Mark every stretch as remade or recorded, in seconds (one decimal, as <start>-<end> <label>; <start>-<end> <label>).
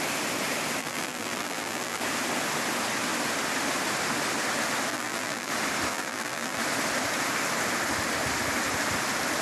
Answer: 0.0-0.8 recorded; 0.8-2.0 remade; 2.0-4.9 recorded; 4.9-5.5 remade; 5.5-5.9 recorded; 5.9-6.6 remade; 6.6-9.4 recorded